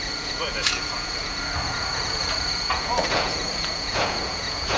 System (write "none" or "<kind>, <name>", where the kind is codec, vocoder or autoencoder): vocoder, Vocos